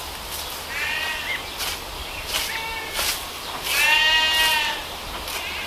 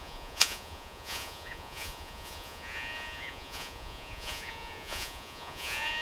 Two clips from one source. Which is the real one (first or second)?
first